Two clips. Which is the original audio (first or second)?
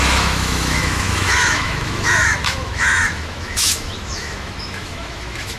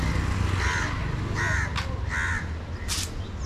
second